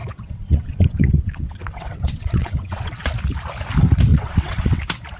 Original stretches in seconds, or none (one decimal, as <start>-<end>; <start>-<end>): 3.1-4.1; 4.8-5.2

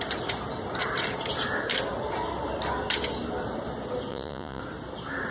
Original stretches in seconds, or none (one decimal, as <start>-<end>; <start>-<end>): 0.0-4.1; 4.6-5.3

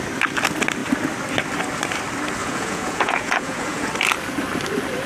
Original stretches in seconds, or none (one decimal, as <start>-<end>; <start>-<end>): 0.0-2.4; 3.9-5.1

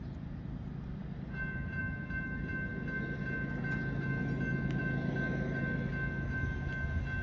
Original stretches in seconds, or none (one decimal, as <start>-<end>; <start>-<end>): 0.0-7.2

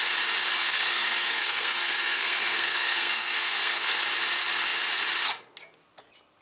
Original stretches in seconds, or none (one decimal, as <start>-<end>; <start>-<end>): 0.0-0.6; 4.0-6.4

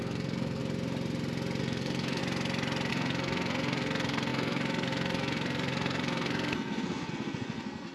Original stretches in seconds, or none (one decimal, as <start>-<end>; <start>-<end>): 0.6-1.6; 2.2-2.9

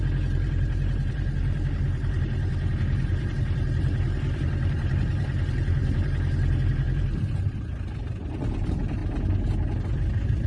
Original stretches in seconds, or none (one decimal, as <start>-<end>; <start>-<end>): 7.7-8.3; 9.0-10.5